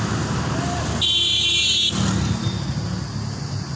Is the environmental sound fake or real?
real